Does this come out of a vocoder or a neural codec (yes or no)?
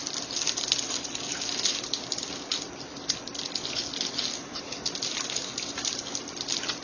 no